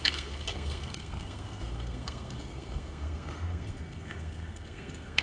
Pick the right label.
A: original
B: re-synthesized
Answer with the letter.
B